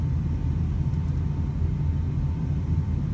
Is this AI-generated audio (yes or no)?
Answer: no